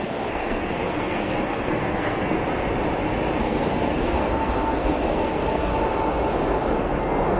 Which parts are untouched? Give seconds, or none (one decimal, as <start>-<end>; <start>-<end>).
2.4-3.4; 5.7-6.8